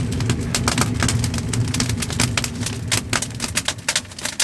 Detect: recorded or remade recorded